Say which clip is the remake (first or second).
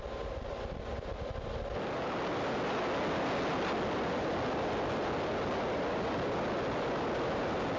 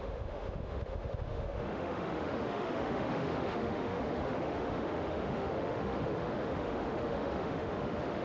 second